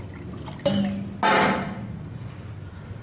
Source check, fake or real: real